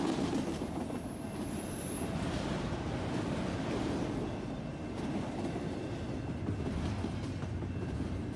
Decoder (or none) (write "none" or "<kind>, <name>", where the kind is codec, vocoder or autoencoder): none